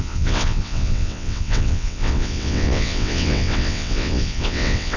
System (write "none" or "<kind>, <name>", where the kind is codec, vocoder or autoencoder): vocoder, WaveNeXt